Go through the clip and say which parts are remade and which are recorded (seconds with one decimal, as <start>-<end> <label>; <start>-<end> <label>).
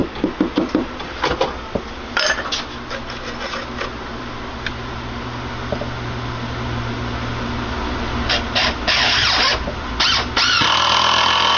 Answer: 0.0-11.6 recorded